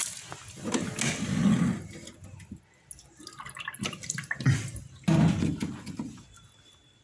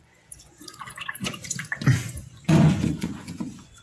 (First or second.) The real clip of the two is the first